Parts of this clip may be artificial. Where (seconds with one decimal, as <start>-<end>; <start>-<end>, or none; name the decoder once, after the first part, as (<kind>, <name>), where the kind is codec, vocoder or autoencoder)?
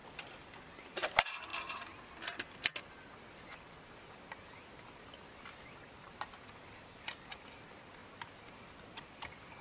none